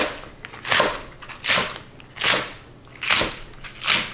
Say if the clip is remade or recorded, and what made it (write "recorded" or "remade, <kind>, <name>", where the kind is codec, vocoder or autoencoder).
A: recorded